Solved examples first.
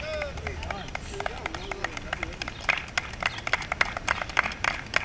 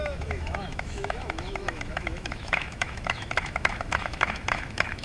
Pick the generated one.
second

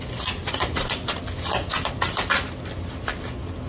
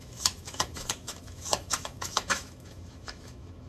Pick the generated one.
second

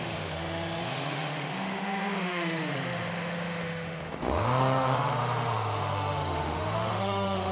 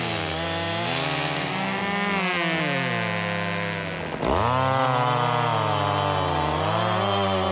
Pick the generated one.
first